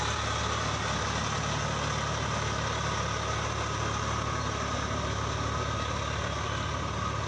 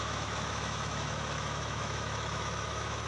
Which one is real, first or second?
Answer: first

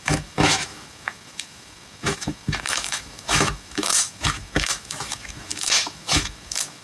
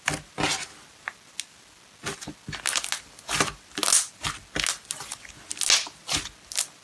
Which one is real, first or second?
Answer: second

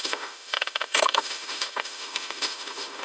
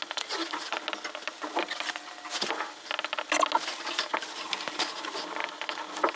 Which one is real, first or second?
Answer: second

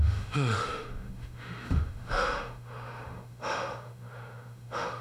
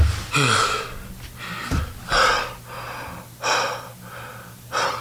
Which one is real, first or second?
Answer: second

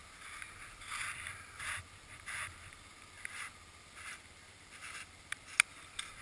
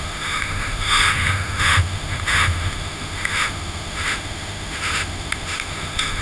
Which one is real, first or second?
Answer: first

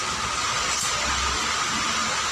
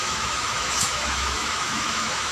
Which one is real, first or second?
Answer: first